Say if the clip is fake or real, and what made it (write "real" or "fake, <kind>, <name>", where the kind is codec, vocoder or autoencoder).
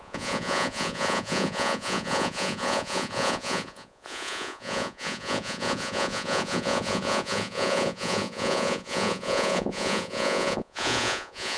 fake, vocoder, Vocos